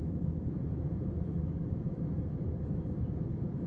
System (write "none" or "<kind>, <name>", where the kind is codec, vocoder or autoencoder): autoencoder, DAC-VAE